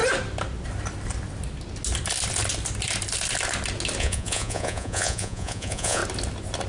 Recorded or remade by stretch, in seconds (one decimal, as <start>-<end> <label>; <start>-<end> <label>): 0.0-4.0 recorded; 4.0-6.0 remade; 6.0-6.7 recorded